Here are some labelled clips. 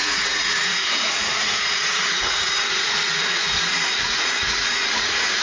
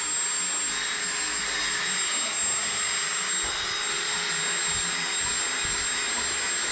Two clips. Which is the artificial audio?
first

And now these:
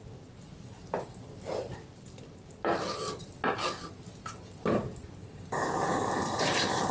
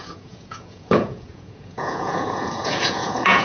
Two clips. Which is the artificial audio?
second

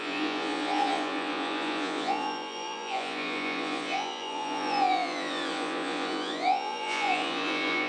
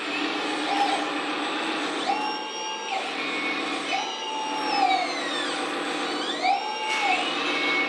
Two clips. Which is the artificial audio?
first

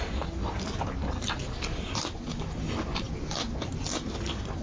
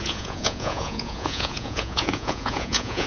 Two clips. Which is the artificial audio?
second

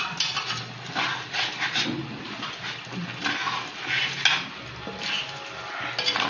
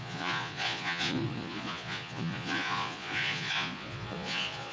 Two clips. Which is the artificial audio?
second